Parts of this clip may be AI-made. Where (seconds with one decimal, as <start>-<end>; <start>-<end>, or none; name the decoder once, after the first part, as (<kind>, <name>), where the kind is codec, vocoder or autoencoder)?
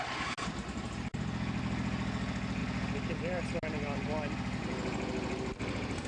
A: none